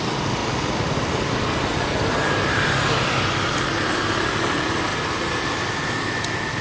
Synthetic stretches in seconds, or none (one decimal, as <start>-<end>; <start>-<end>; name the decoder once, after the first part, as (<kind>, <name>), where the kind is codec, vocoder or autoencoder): none